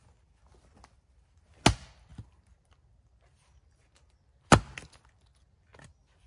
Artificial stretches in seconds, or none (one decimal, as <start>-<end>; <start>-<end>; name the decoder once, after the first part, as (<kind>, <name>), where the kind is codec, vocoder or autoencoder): none